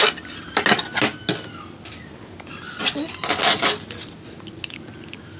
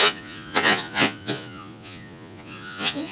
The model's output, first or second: second